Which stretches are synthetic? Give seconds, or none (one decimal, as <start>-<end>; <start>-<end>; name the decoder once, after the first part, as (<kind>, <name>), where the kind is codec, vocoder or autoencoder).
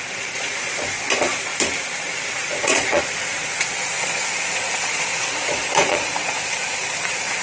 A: 0.0-1.5 (vocoder, Vocos); 2.3-7.4